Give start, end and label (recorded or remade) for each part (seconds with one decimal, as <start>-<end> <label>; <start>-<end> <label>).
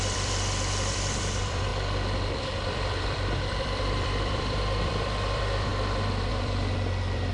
0.0-1.7 remade; 1.7-2.4 recorded; 2.4-5.7 remade; 5.7-6.3 recorded; 6.3-7.3 remade